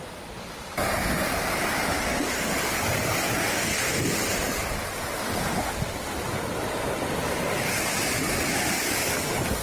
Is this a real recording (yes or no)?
yes